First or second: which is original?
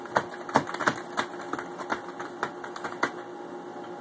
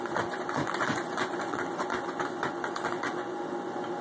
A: first